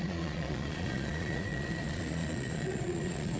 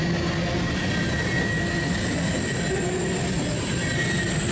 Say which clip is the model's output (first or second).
first